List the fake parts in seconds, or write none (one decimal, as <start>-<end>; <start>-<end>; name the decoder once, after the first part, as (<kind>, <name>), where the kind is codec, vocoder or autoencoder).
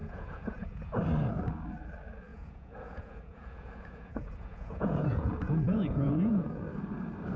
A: 0.0-1.0 (vocoder, Vocos); 2.3-6.6